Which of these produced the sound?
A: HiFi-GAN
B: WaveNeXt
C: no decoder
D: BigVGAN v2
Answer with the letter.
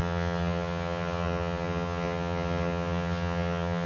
A